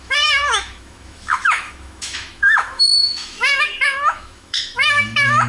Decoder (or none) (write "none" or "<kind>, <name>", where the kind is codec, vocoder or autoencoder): autoencoder, DAC-VAE